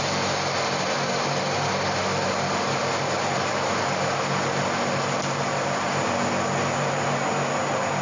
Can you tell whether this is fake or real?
real